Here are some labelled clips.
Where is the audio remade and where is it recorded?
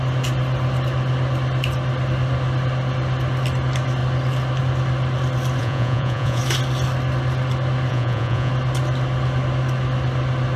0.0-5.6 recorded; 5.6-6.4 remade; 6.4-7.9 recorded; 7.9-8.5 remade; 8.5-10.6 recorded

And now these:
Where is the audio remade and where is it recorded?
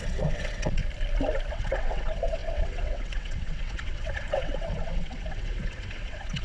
0.0-0.8 remade; 0.8-1.5 recorded; 1.5-6.4 remade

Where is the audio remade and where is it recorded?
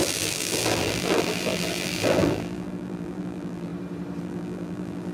0.0-3.7 remade; 3.7-4.2 recorded; 4.2-5.1 remade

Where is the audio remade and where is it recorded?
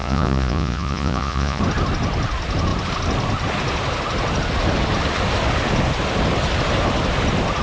0.0-1.6 remade; 1.6-7.6 recorded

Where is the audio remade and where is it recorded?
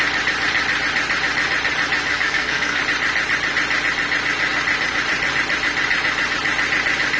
0.0-2.1 recorded; 2.1-2.8 remade; 2.8-7.2 recorded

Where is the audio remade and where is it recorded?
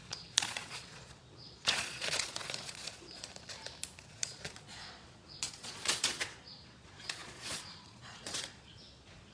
0.0-3.3 remade; 3.3-4.1 recorded; 4.1-9.3 remade